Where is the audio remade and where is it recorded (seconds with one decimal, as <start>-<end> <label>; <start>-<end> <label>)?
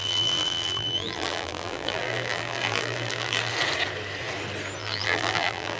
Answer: 0.0-3.5 remade; 3.5-4.8 recorded; 4.8-5.8 remade